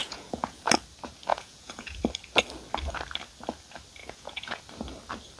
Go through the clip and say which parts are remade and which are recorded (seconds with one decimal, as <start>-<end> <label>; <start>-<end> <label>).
0.0-0.6 remade; 0.6-1.3 recorded; 1.3-2.0 remade; 2.0-4.0 recorded; 4.0-4.6 remade; 4.6-5.4 recorded